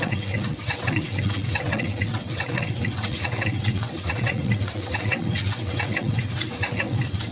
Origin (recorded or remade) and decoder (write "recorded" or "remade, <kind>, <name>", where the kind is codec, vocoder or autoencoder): remade, vocoder, WaveNeXt